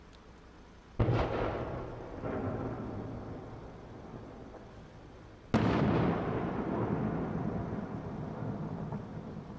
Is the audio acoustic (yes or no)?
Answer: yes